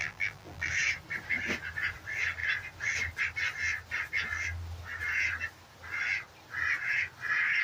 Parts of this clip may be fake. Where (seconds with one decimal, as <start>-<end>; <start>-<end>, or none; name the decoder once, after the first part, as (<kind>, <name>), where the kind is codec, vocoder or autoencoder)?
0.0-0.7 (vocoder, BigVGAN v2)